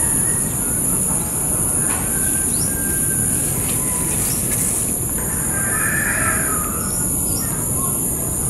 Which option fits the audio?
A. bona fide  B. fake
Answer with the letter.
B